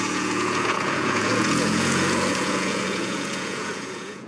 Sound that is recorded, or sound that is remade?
remade